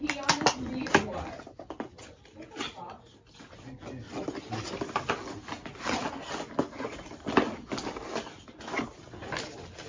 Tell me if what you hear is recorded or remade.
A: recorded